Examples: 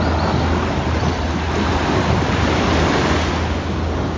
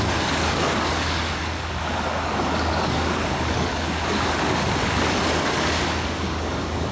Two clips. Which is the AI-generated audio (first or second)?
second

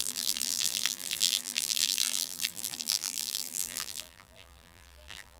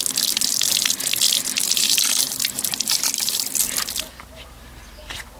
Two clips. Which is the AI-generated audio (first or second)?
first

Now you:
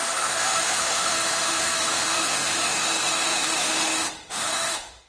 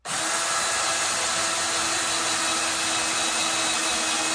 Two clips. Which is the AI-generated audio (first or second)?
first